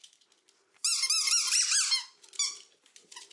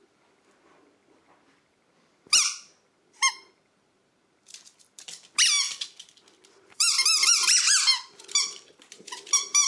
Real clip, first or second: first